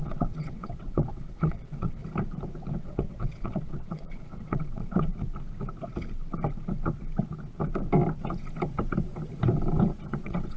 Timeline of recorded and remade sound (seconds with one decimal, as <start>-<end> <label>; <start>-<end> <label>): 0.0-2.0 remade; 2.0-2.8 recorded; 2.8-5.1 remade; 5.1-10.1 recorded; 10.1-10.6 remade